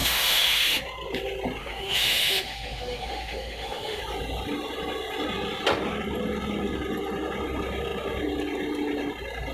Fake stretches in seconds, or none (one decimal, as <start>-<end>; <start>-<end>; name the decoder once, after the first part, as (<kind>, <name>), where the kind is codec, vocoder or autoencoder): 0.0-0.8 (autoencoder, DAC-VAE); 1.6-4.0